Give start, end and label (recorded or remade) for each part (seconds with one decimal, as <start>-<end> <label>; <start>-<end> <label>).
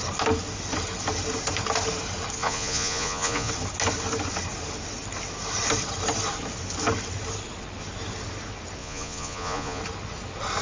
0.0-2.4 recorded; 2.4-3.5 remade; 3.5-8.8 recorded; 8.8-9.8 remade; 9.8-10.6 recorded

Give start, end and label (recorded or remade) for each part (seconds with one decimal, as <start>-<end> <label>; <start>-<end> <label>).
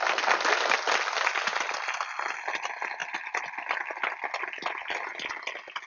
0.0-5.9 recorded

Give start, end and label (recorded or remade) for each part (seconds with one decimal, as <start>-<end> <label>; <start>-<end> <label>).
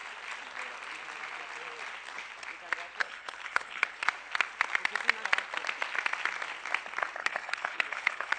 0.0-3.0 recorded; 3.0-4.0 remade; 4.0-7.2 recorded; 7.2-8.4 remade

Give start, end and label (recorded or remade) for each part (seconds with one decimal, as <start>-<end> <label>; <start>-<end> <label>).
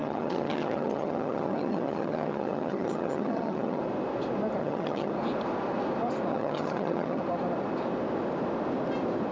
0.0-3.8 remade; 3.8-4.6 recorded; 4.6-5.1 remade; 5.1-6.3 recorded; 6.3-7.2 remade; 7.2-9.3 recorded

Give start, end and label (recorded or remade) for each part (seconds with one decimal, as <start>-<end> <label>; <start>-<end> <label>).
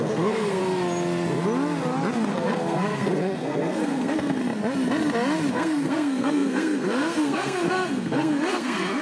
0.0-0.6 remade; 0.6-2.3 recorded; 2.3-4.4 remade; 4.4-5.5 recorded; 5.5-9.0 remade